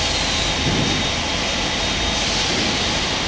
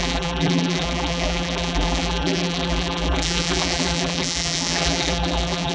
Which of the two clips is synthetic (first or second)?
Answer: second